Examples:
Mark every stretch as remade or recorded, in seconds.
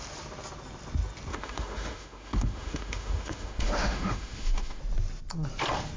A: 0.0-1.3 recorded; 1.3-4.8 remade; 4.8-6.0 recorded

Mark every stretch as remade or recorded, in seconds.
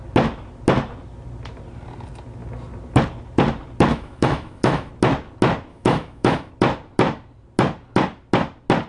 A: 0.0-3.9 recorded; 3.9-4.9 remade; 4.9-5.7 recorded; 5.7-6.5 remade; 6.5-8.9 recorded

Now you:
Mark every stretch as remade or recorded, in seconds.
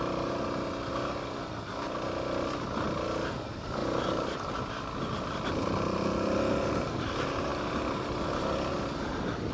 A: 0.0-9.5 recorded